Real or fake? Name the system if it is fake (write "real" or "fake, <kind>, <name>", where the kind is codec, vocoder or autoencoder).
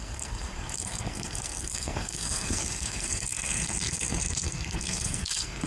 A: fake, codec, SNAC